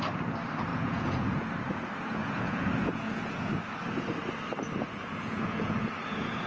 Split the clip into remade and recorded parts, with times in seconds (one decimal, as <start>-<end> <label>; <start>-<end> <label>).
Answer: 0.0-0.7 recorded; 0.7-1.5 remade; 1.5-2.2 recorded; 2.2-3.5 remade; 3.5-4.8 recorded; 4.8-6.5 remade